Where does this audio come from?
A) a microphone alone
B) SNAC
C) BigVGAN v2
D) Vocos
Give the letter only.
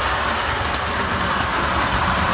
A